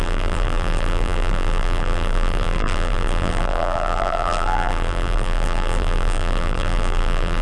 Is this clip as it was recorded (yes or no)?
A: no